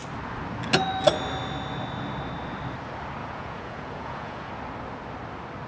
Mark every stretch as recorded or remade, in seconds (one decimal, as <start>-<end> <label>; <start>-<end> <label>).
0.0-3.2 recorded; 3.2-4.5 remade; 4.5-5.7 recorded

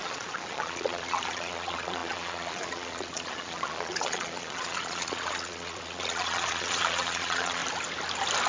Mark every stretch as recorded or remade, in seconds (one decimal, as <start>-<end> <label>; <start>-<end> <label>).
0.0-7.6 remade; 7.6-8.5 recorded

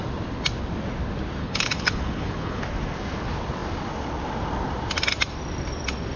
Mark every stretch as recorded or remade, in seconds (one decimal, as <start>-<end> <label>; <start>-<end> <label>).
0.0-1.4 recorded; 1.4-2.6 remade; 2.6-6.2 recorded